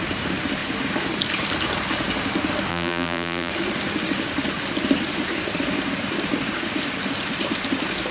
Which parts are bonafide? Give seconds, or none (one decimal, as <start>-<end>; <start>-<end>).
0.0-2.7; 3.5-8.1